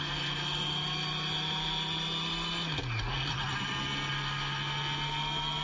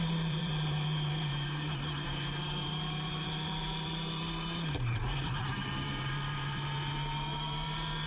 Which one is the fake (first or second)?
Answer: second